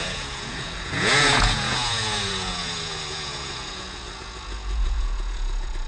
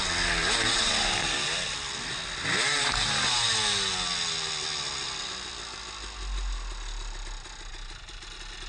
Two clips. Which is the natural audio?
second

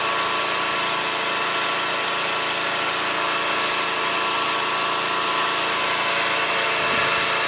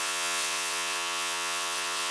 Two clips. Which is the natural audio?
first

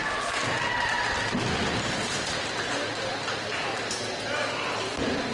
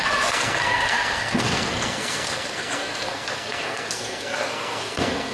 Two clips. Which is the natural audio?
first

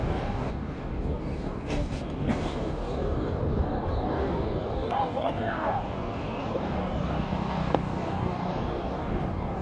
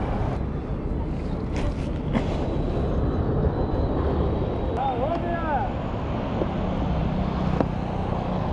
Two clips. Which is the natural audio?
second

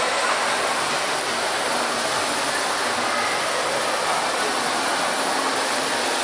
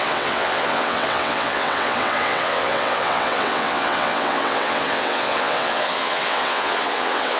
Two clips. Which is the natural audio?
first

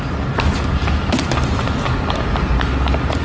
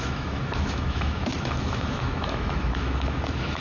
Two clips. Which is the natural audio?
first